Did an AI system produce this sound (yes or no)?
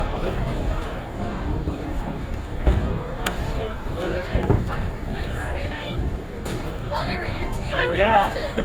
yes